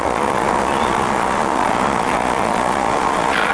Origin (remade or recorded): remade